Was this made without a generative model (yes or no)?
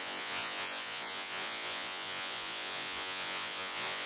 no